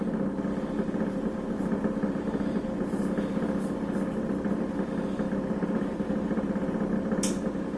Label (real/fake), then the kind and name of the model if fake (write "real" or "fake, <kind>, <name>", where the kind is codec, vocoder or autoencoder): real